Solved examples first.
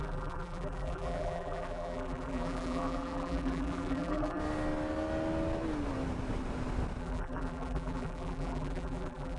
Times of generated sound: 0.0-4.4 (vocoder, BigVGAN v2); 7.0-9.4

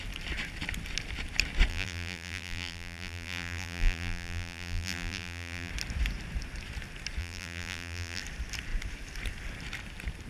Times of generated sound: 1.7-5.7 (vocoder, BigVGAN v2); 7.2-8.2

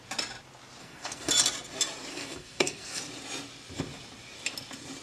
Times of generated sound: 0.8-1.3 (codec, SNAC); 2.1-3.0

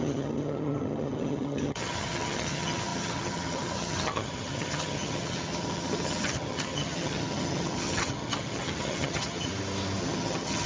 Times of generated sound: 0.0-9.5 (vocoder, HiFi-GAN); 10.0-10.7